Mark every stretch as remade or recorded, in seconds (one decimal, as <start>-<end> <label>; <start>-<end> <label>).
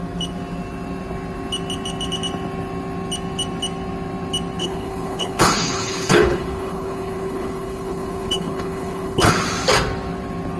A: 0.0-4.6 recorded; 4.6-9.3 remade; 9.3-10.6 recorded